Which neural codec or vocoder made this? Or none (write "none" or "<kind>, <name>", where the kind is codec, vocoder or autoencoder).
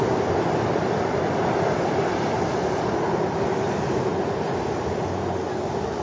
none